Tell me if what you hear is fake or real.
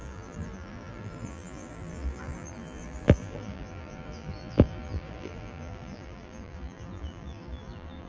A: fake